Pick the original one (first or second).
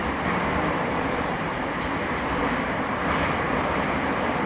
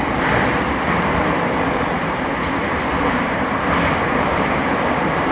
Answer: second